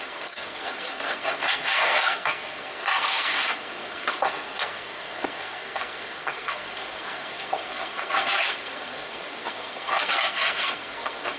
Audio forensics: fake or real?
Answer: fake